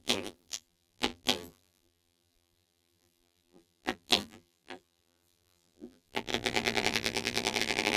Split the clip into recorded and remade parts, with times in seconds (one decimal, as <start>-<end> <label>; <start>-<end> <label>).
0.0-8.0 remade